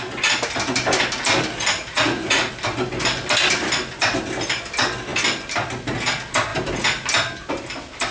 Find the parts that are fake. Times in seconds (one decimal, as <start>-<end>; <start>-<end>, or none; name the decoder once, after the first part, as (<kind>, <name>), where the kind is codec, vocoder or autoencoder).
1.7-2.5 (vocoder, Vocos)